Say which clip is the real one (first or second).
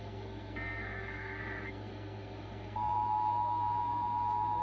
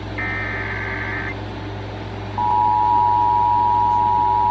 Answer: second